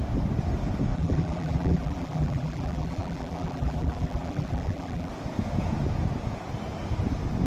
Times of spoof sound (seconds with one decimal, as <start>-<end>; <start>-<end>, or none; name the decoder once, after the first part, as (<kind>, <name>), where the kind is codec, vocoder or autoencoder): 0.9-5.1 (vocoder, BigVGAN v2)